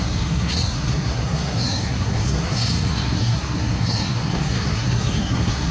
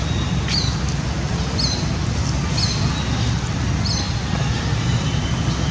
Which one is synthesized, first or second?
first